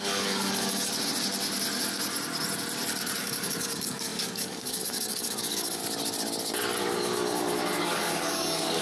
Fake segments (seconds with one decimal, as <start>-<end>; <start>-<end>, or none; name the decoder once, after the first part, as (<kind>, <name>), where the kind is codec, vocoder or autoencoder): 0.0-0.9 (codec, DAC); 3.2-5.8; 6.8-8.8